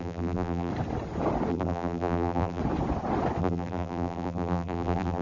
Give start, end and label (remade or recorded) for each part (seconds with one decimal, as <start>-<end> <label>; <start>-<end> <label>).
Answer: 0.0-0.7 remade; 0.7-1.5 recorded; 1.5-2.6 remade; 2.6-3.4 recorded; 3.4-5.2 remade